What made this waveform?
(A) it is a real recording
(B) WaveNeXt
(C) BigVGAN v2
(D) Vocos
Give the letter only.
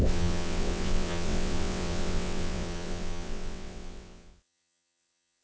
B